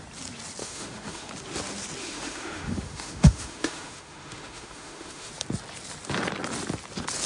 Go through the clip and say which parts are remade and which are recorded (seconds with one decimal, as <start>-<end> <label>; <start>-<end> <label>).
0.0-0.6 recorded; 0.6-1.3 remade; 1.3-2.0 recorded; 2.0-5.3 remade; 5.3-7.3 recorded